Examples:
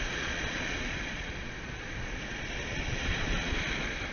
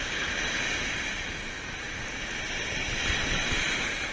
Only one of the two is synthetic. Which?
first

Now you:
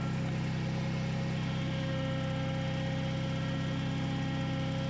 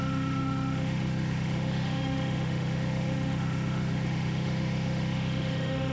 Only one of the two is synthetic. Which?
second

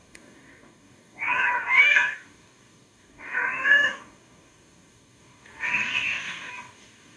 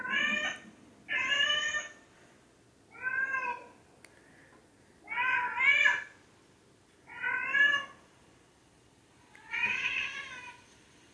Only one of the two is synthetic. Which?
first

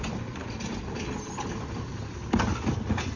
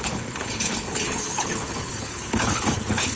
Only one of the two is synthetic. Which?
second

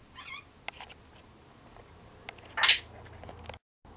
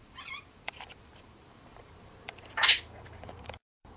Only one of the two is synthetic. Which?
second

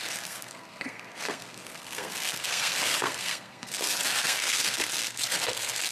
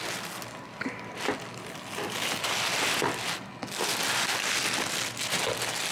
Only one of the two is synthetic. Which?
first